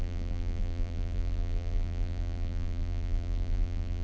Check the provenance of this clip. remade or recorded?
remade